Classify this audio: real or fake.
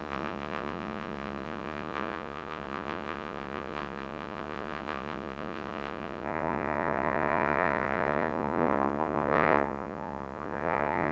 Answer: fake